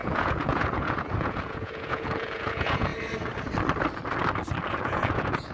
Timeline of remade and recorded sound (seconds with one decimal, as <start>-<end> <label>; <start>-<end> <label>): 0.0-2.9 remade; 2.9-4.7 recorded; 4.7-5.5 remade